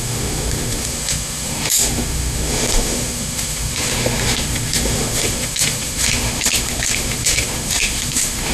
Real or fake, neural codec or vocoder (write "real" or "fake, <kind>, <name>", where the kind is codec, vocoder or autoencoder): fake, autoencoder, DAC-VAE